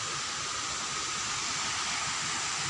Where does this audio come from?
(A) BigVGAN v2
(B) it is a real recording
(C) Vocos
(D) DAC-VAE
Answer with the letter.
B